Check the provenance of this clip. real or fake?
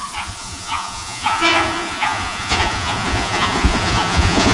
fake